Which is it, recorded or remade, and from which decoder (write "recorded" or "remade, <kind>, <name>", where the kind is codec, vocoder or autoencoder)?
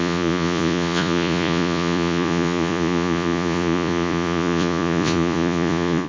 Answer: remade, vocoder, Vocos